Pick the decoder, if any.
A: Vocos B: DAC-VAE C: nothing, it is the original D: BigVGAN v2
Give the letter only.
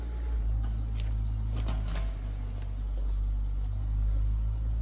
C